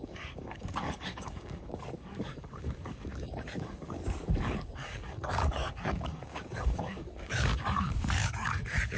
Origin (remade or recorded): remade